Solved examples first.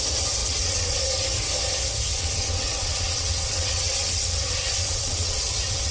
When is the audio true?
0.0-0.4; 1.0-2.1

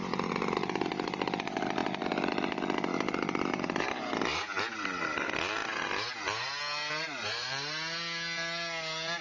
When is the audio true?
0.0-9.2

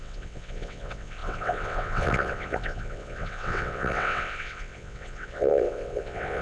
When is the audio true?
none

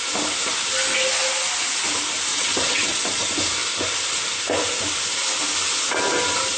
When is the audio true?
0.0-2.3; 3.2-6.6

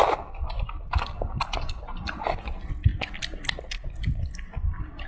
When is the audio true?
0.0-5.1

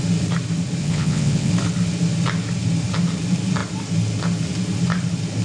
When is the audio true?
0.0-0.8; 1.5-5.4